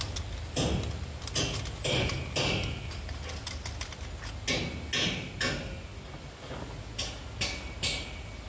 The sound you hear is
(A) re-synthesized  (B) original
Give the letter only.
B